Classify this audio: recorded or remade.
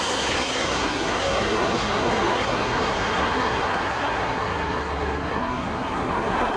remade